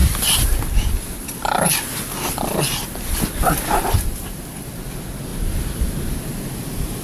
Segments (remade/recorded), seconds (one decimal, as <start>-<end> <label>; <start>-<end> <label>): 0.0-0.6 remade; 0.6-5.3 recorded; 5.3-6.2 remade; 6.2-7.0 recorded

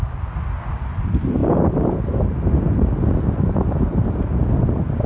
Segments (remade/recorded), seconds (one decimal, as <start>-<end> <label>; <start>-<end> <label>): 0.0-5.1 recorded

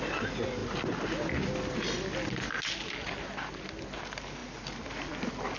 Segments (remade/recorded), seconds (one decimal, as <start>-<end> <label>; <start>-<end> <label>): 0.0-5.6 recorded

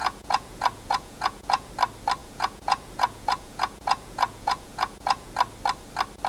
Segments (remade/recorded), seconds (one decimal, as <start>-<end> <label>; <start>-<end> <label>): 0.0-1.7 remade; 1.7-2.2 recorded; 2.2-5.3 remade; 5.3-6.3 recorded

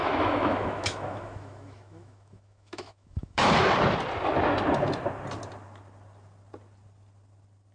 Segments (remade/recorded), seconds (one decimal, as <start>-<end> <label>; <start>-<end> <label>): 0.0-3.5 remade; 3.5-7.7 recorded

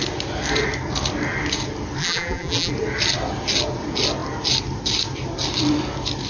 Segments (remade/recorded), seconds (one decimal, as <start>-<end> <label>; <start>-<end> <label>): 0.0-2.0 recorded; 2.0-2.7 remade; 2.7-6.3 recorded

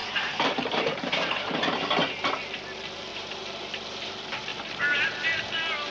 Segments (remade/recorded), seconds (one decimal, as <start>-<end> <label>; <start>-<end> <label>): 0.0-1.9 remade; 1.9-3.1 recorded; 3.1-3.6 remade; 3.6-5.9 recorded